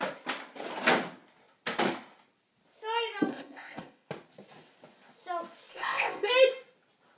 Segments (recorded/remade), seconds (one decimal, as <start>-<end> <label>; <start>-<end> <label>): 0.0-3.3 recorded; 3.3-4.1 remade; 4.1-5.7 recorded; 5.7-6.3 remade; 6.3-7.2 recorded